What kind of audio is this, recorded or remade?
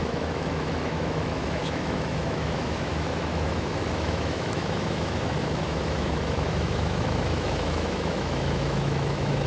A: remade